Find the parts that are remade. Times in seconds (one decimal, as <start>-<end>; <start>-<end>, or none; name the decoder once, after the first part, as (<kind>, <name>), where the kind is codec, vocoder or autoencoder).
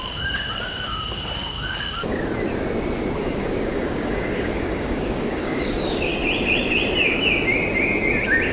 0.0-2.1 (codec, DAC); 3.2-6.1